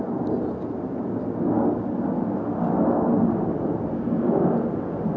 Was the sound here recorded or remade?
recorded